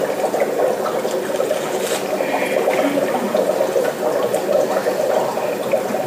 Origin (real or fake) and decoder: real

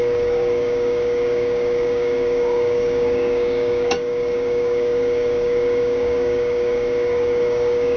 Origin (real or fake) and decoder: fake, codec, DAC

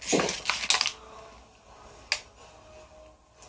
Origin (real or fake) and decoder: real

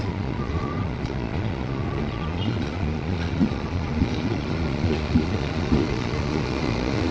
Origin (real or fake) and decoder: fake, vocoder, Vocos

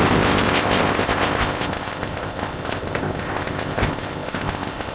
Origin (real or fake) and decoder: fake, codec, ZipCodec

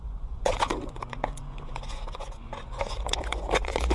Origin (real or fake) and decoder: fake, vocoder, Vocos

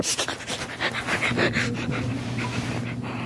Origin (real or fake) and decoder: real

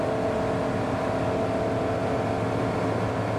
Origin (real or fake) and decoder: real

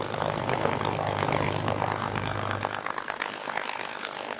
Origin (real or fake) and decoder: fake, codec, SNAC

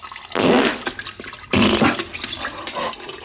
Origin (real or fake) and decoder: real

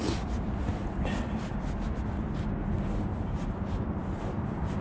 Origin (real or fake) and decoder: real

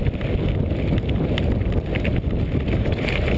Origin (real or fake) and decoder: real